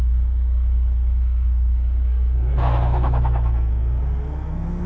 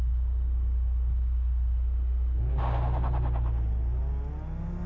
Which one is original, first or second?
second